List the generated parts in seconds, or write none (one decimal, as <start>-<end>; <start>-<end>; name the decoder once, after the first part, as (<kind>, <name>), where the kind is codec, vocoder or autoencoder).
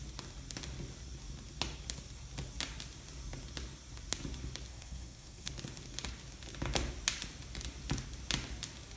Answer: 4.7-5.5 (codec, SNAC)